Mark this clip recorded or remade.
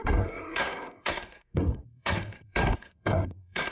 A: remade